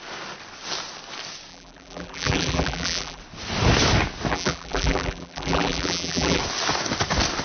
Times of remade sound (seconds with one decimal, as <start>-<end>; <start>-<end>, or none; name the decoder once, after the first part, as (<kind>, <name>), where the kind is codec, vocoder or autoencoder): 1.5-3.2 (vocoder, BigVGAN v2); 4.3-6.4

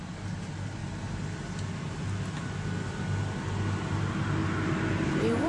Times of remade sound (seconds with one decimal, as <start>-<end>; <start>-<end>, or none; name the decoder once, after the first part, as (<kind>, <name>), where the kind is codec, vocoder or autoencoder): 4.4-5.5 (vocoder, BigVGAN v2)

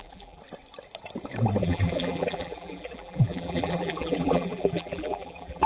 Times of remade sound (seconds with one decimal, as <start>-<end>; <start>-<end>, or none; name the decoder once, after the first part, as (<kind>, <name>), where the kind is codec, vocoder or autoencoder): 0.0-0.4 (vocoder, BigVGAN v2); 1.6-5.7

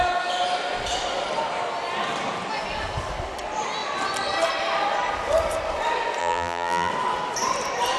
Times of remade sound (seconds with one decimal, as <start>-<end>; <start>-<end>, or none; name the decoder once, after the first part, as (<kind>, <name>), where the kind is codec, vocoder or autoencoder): 6.2-6.9 (vocoder, BigVGAN v2)

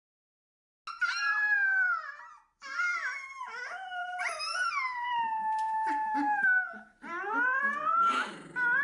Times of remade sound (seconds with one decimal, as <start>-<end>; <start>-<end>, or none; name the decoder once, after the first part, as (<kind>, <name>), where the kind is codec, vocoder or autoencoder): 4.0-7.6 (vocoder, BigVGAN v2)

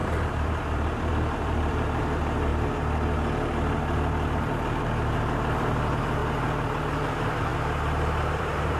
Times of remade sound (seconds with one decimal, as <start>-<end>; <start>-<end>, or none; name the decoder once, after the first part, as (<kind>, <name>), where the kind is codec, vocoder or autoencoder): 0.0-2.5 (vocoder, BigVGAN v2); 4.3-6.2; 6.8-8.8

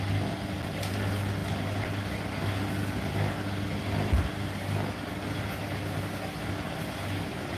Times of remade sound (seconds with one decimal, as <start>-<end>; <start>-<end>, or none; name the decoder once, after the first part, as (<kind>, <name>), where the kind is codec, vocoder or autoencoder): none

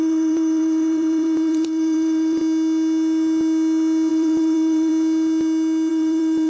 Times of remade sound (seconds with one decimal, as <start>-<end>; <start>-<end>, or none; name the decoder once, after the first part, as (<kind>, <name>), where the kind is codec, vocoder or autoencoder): 0.0-2.4 (vocoder, BigVGAN v2); 4.1-4.9; 5.9-6.5